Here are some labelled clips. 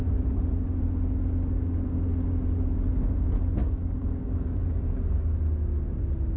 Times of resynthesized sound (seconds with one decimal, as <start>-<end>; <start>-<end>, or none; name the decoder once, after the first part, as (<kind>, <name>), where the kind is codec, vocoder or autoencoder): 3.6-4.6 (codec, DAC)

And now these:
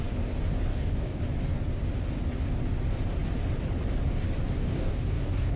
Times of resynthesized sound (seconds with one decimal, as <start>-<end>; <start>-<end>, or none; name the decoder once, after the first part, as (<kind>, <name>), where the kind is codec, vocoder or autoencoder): 0.7-1.2 (codec, DAC); 4.6-5.6

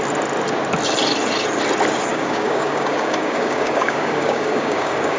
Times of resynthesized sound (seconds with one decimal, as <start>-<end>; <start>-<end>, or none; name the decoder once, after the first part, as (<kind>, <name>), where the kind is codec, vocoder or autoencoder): 2.1-5.2 (codec, DAC)

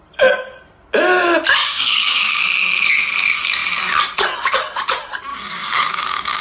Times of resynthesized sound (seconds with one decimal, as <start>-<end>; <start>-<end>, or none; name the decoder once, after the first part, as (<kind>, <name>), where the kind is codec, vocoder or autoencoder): 1.6-2.4 (codec, DAC); 5.3-6.4

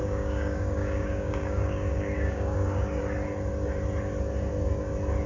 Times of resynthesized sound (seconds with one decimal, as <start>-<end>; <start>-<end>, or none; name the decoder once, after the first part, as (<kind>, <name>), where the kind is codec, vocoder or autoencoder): 0.0-3.0 (codec, DAC)

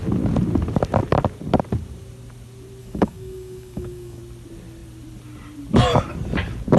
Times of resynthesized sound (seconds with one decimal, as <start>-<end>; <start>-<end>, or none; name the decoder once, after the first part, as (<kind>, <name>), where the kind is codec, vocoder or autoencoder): 2.8-4.2 (codec, DAC)